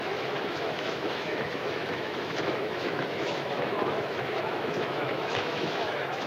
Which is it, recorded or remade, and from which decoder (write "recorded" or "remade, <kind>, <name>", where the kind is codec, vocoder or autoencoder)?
remade, autoencoder, DAC-VAE